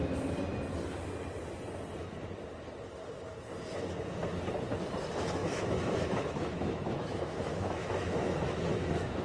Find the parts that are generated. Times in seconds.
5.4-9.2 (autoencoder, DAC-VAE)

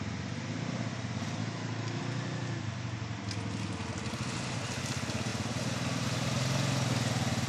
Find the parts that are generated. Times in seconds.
1.4-2.0 (autoencoder, DAC-VAE)

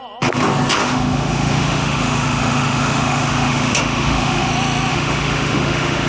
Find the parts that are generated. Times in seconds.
0.8-4.5 (autoencoder, DAC-VAE); 4.9-6.1

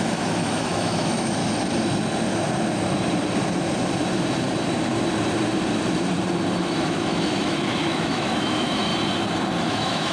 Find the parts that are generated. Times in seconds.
0.0-1.4 (autoencoder, DAC-VAE); 6.6-8.9; 9.6-10.1